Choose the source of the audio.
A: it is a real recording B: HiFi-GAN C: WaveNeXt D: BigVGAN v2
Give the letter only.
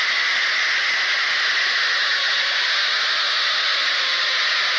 A